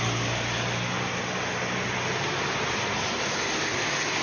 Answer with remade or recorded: recorded